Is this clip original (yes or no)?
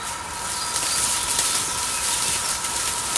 yes